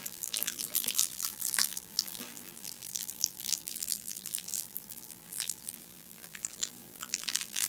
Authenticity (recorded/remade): remade